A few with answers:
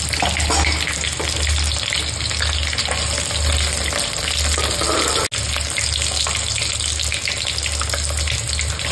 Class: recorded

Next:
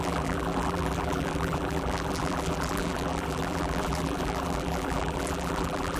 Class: remade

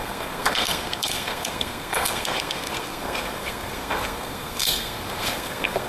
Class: remade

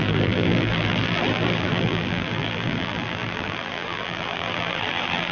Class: remade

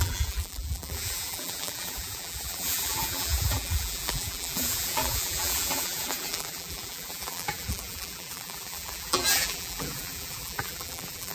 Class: remade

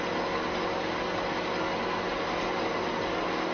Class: recorded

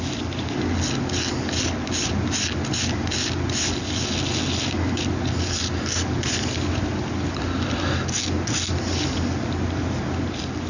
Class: recorded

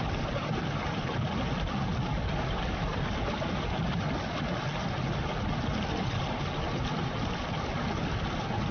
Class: recorded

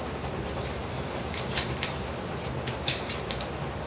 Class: remade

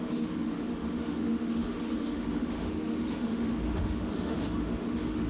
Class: remade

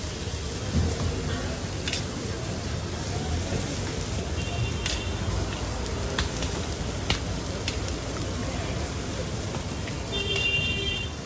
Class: recorded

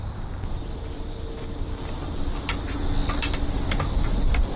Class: recorded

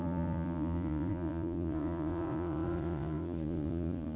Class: remade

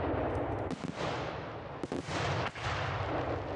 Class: recorded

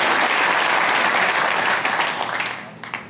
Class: recorded